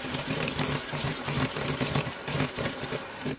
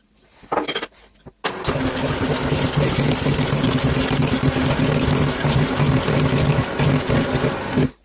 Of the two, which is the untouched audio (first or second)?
second